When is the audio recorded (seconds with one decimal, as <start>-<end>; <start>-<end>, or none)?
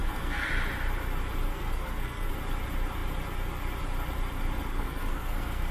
0.5-1.5; 2.3-4.7